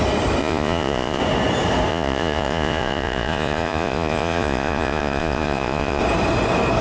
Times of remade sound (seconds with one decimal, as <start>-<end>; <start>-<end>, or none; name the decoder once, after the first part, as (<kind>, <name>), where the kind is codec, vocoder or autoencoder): 0.4-1.2 (vocoder, Vocos); 1.9-6.0